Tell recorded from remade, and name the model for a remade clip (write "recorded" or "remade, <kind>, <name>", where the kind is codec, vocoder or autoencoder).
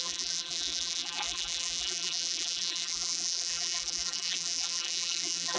remade, vocoder, BigVGAN v2